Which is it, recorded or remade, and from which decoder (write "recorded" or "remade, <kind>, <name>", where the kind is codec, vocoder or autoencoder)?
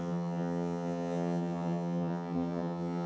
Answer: remade, vocoder, HiFi-GAN